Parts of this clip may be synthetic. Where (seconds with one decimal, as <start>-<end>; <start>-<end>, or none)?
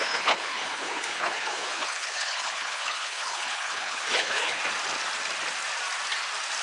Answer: 0.0-4.6